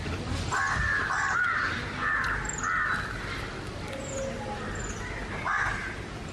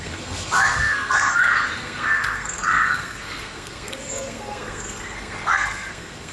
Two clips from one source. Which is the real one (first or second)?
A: first